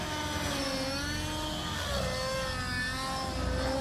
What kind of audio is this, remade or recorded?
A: recorded